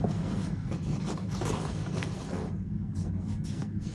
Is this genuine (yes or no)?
no